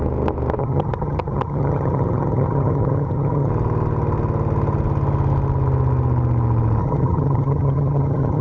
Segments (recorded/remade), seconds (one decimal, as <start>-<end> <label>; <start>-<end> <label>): 0.0-0.6 recorded; 0.6-3.5 remade; 3.5-6.8 recorded; 6.8-8.4 remade